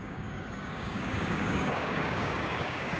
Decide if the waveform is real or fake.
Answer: fake